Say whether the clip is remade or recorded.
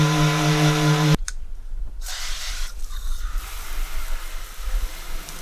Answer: recorded